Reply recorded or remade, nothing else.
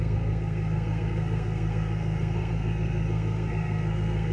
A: remade